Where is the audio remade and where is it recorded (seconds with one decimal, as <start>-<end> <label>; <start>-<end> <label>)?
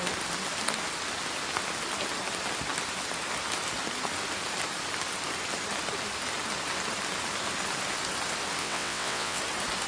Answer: 0.0-8.6 recorded; 8.6-9.4 remade; 9.4-9.9 recorded